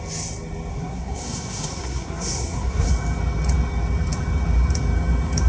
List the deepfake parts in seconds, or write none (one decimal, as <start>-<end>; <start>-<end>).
0.7-2.9